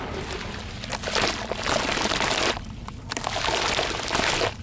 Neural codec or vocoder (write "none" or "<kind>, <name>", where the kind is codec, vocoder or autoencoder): none